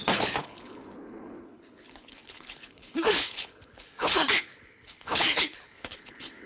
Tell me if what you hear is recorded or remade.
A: remade